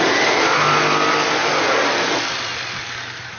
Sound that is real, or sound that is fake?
real